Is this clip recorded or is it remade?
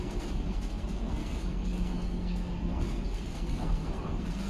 remade